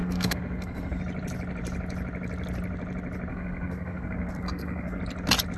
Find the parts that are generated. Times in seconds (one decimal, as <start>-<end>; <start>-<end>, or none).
0.0-1.0; 3.3-5.0